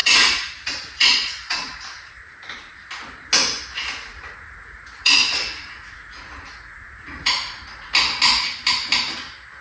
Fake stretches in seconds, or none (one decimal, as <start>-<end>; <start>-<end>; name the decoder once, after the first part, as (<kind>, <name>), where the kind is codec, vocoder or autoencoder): 0.0-2.1 (vocoder, Vocos); 4.1-7.9